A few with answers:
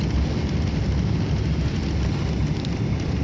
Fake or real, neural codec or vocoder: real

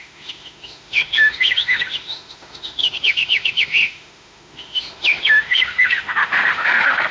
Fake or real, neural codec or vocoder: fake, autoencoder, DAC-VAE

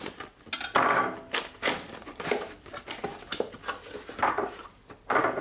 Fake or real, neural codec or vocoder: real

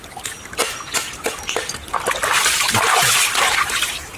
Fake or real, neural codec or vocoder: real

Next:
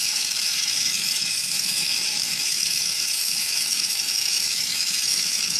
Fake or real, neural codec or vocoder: fake, autoencoder, DAC-VAE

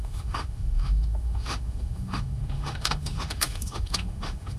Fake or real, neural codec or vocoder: fake, autoencoder, DAC-VAE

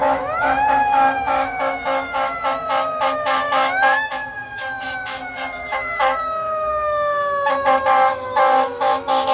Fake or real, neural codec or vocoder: fake, autoencoder, DAC-VAE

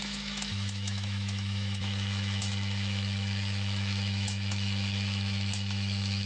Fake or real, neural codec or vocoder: fake, autoencoder, DAC-VAE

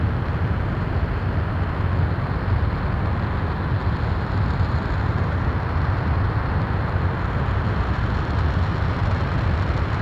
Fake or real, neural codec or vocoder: real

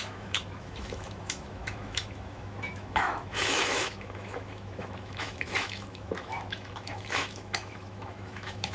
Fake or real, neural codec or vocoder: fake, autoencoder, DAC-VAE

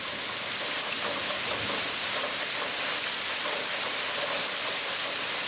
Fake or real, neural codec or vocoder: real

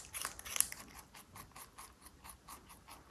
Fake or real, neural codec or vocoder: real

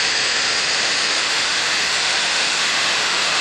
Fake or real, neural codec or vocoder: fake, autoencoder, DAC-VAE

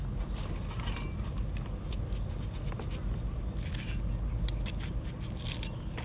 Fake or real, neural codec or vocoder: real